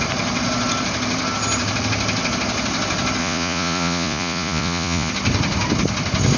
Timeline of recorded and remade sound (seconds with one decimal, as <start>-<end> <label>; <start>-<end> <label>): 0.0-3.2 recorded; 3.2-5.1 remade; 5.1-6.4 recorded